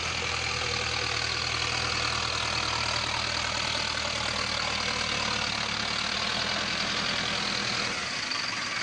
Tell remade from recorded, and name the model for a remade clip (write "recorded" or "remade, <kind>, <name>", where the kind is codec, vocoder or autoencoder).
recorded